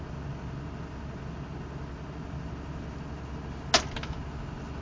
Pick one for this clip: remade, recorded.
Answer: recorded